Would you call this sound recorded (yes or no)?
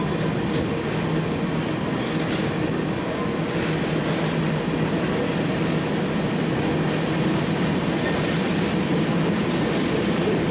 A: yes